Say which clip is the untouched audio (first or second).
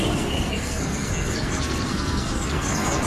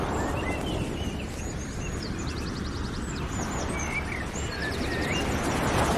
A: second